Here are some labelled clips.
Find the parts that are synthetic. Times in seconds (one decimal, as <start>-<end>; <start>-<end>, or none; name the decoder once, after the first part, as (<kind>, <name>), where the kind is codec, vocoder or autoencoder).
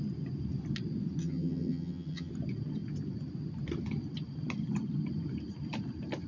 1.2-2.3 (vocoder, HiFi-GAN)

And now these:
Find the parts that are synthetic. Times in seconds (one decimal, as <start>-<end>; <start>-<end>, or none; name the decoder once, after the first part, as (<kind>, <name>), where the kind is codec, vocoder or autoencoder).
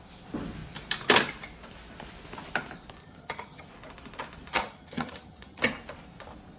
3.0-3.7 (vocoder, HiFi-GAN); 4.5-5.6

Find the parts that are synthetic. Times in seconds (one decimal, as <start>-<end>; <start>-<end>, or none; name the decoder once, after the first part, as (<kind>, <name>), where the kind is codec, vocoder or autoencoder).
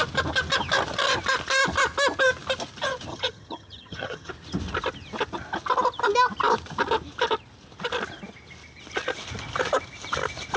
3.1-4.3 (vocoder, HiFi-GAN)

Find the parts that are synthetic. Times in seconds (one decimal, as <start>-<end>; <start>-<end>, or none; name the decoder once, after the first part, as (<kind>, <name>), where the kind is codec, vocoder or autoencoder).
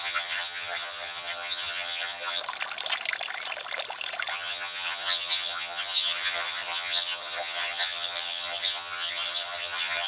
0.0-2.4 (vocoder, HiFi-GAN); 4.3-10.1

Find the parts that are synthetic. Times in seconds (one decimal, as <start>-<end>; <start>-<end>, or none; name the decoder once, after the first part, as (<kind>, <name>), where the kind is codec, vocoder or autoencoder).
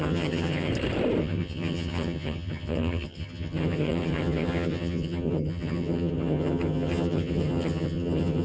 0.0-0.7 (vocoder, HiFi-GAN); 1.2-8.4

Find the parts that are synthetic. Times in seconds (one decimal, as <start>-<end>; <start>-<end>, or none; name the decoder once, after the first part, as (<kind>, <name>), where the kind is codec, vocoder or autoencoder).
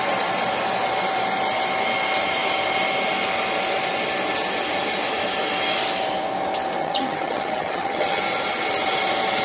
6.8-8.2 (vocoder, HiFi-GAN)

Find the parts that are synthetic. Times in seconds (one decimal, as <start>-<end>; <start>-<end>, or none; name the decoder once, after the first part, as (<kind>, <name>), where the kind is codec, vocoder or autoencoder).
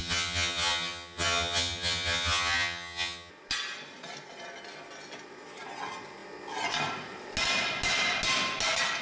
0.0-3.3 (vocoder, HiFi-GAN)